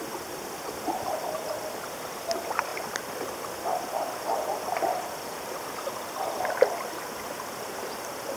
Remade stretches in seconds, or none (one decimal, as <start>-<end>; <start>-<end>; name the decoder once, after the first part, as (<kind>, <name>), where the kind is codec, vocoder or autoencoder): none